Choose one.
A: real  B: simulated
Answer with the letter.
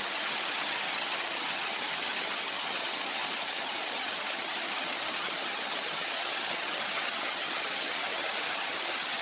B